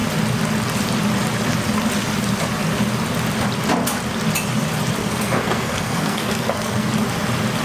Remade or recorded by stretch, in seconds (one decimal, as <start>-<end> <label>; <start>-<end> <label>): 0.0-5.0 recorded; 5.0-6.9 remade; 6.9-7.6 recorded